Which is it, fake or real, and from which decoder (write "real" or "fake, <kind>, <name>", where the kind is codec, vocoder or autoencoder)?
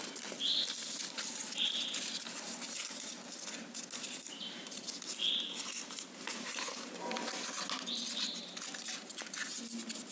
real